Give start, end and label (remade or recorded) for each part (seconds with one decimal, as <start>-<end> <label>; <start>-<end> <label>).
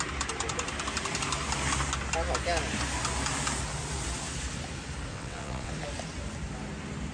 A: 0.0-5.1 recorded; 5.1-5.7 remade; 5.7-7.1 recorded